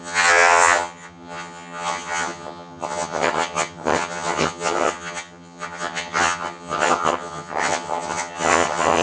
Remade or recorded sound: remade